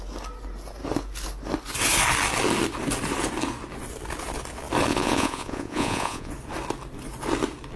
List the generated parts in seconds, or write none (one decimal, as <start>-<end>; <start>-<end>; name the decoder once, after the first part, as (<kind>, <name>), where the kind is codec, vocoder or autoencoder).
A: 4.9-6.3 (vocoder, Vocos)

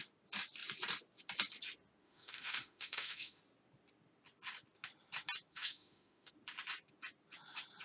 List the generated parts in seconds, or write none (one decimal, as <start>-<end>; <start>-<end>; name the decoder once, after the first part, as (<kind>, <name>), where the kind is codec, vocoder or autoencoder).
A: 2.0-3.4 (autoencoder, DAC-VAE); 5.5-6.3

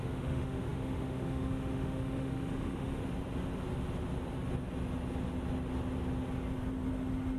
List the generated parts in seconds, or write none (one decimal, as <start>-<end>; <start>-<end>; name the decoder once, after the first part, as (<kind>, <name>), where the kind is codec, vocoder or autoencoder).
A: 0.0-3.0 (autoencoder, DAC-VAE)

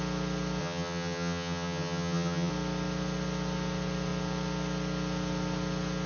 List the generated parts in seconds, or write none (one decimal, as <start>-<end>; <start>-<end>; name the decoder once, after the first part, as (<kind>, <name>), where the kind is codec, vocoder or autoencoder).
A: 0.6-2.5 (vocoder, HiFi-GAN)

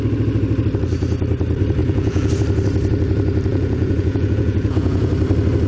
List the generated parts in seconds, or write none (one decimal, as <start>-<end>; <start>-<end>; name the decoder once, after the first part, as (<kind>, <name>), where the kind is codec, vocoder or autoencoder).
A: 1.8-2.3 (vocoder, Vocos); 3.5-5.1

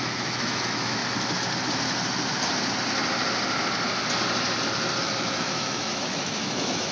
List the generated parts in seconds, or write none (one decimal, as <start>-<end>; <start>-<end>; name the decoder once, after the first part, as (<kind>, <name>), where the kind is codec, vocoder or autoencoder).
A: 0.0-1.0 (autoencoder, DAC-VAE); 5.0-6.9